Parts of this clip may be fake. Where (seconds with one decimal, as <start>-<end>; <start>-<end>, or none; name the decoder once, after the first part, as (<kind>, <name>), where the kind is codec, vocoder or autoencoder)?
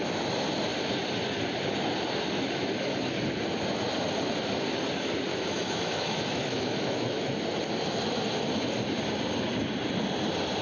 5.3-7.3 (autoencoder, DAC-VAE)